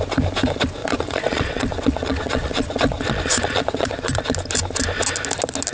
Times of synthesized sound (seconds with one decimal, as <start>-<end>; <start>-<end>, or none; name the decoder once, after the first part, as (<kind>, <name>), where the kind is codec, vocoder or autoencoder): 0.8-4.2 (vocoder, Vocos)